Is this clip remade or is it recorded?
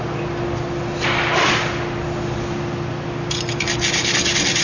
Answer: recorded